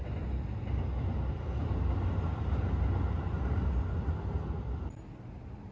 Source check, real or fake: real